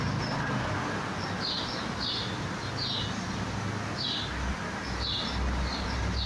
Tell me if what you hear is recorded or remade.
recorded